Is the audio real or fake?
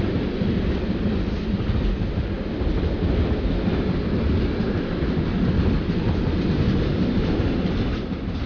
real